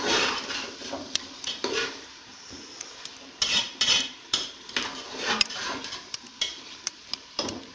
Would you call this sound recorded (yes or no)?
no